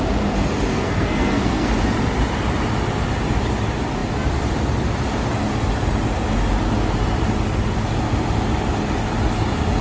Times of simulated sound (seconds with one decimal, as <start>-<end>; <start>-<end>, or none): 0.7-1.7